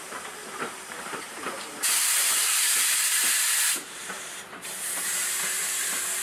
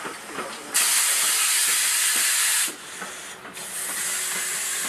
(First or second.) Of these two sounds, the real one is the second